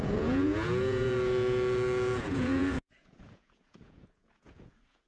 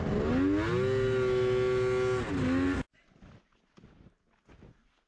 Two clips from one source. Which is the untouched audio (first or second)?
second